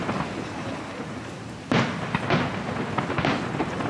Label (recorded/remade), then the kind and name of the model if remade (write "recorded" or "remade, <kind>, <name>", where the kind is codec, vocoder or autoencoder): recorded